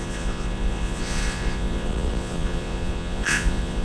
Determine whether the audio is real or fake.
fake